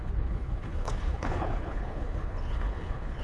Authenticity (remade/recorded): remade